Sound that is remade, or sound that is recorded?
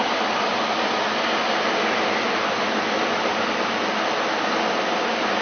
recorded